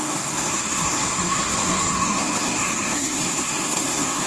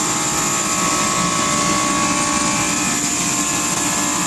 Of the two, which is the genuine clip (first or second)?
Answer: second